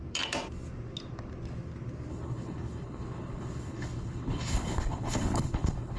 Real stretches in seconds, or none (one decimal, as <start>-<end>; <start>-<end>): 0.0-2.1